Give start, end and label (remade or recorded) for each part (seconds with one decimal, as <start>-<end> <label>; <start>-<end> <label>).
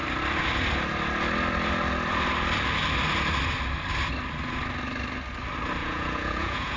0.0-5.8 recorded; 5.8-6.8 remade